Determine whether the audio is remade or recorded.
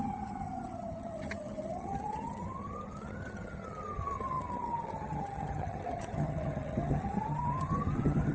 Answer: remade